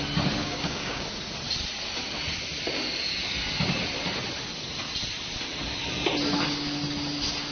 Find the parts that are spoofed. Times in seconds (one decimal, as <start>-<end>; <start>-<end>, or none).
0.4-1.1